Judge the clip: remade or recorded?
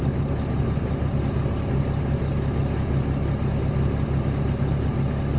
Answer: recorded